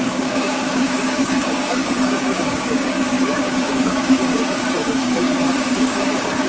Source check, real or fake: fake